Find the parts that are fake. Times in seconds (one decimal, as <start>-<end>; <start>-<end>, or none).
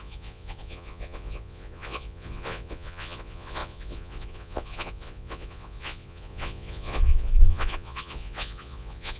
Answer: 0.0-9.2